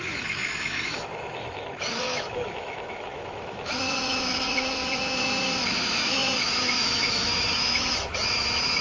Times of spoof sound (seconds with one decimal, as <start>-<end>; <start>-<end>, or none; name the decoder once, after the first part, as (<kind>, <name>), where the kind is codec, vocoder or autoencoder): 0.0-8.8 (autoencoder, DAC-VAE)